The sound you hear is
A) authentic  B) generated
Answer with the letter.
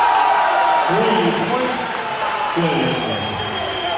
A